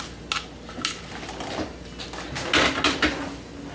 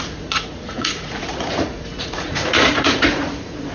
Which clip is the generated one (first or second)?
second